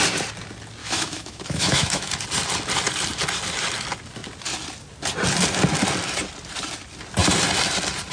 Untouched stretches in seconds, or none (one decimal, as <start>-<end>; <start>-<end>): 0.0-0.8; 2.1-8.1

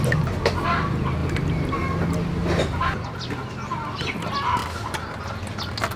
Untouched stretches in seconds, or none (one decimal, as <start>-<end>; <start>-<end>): 0.0-6.0

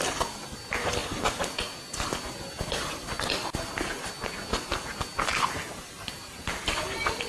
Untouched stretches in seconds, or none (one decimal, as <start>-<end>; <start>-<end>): 0.0-5.3; 6.6-7.3

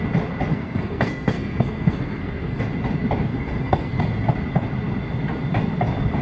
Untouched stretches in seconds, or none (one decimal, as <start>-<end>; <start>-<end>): 0.0-0.5; 2.6-3.3; 4.0-6.2

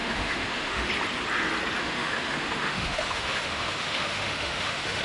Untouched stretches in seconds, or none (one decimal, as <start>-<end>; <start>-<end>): 0.9-1.8

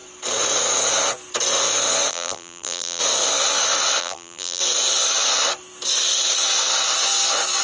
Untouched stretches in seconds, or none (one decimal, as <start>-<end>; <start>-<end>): 0.0-2.1; 3.0-4.0; 4.6-7.6

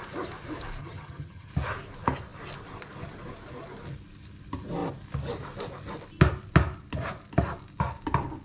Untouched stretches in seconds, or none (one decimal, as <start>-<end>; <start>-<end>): 0.0-0.8; 1.5-8.4